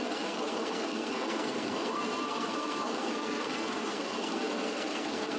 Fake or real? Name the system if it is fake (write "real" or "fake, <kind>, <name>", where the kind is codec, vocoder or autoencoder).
fake, codec, SNAC